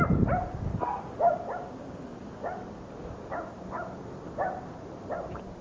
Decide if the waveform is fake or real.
real